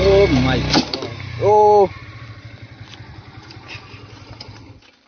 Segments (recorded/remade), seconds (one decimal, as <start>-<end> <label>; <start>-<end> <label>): 0.0-5.1 recorded